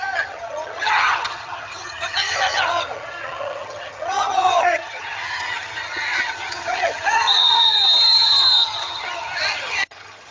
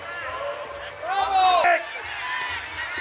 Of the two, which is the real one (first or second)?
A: second